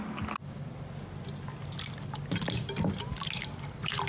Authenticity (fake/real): real